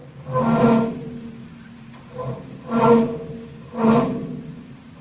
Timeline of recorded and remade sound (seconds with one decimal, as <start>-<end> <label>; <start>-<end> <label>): 0.0-0.9 recorded; 0.9-5.0 remade

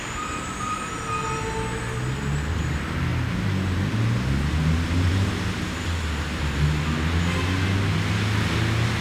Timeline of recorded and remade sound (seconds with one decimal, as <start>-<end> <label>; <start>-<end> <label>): 0.0-9.0 recorded